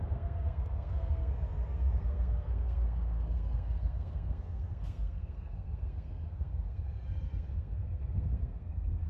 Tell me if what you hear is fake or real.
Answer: fake